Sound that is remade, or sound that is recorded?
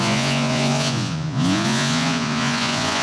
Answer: remade